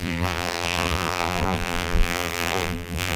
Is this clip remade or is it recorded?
remade